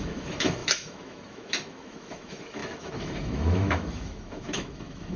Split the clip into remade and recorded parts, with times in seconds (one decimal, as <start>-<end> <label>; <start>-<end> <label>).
0.0-5.2 remade

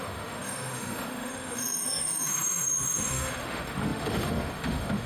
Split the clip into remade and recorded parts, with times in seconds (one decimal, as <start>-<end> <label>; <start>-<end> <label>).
0.0-5.1 remade